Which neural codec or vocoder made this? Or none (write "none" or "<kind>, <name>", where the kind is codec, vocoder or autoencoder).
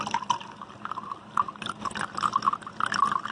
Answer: none